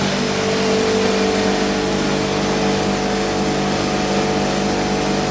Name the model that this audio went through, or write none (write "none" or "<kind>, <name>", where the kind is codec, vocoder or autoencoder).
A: none